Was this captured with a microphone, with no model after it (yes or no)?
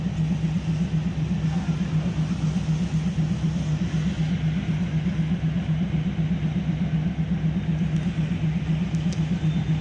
yes